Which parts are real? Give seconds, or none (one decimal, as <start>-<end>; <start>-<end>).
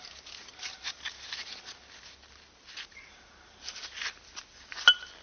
0.0-5.2